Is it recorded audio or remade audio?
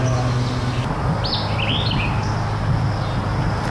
recorded